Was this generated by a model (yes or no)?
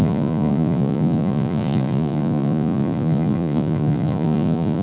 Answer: yes